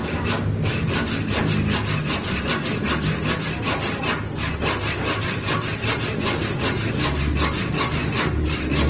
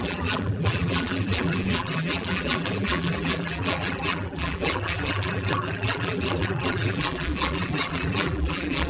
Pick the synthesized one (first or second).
second